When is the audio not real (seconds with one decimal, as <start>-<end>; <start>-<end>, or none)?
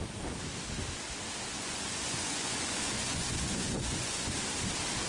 1.5-4.3